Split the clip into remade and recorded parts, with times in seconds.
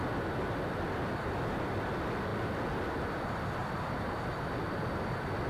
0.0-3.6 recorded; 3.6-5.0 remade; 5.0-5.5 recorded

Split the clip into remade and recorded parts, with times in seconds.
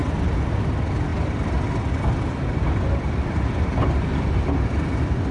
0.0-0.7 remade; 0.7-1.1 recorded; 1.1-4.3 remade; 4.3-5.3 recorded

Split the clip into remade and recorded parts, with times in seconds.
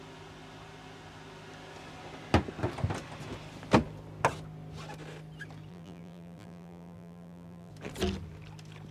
0.0-5.7 recorded; 5.7-7.7 remade; 7.7-8.9 recorded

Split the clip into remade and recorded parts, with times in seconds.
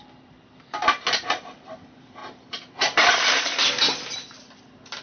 0.0-2.2 recorded; 2.2-2.7 remade; 2.7-5.0 recorded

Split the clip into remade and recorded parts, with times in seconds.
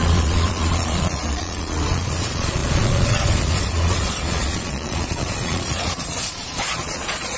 0.0-7.4 remade